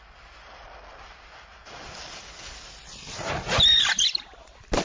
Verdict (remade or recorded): recorded